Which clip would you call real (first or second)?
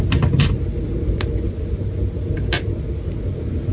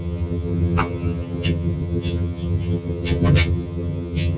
first